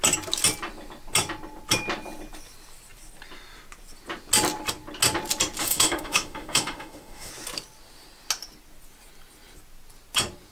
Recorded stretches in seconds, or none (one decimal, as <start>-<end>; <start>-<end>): 0.0-5.6; 7.3-10.5